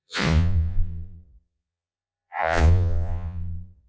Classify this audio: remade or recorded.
remade